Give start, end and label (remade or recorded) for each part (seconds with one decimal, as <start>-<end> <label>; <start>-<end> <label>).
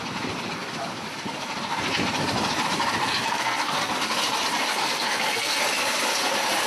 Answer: 0.0-3.2 recorded; 3.2-3.9 remade; 3.9-4.7 recorded; 4.7-5.6 remade; 5.6-6.7 recorded